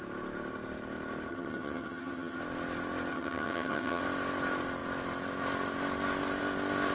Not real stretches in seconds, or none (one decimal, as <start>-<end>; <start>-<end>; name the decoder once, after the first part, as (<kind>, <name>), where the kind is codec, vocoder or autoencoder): 1.3-2.4 (vocoder, HiFi-GAN); 3.1-4.0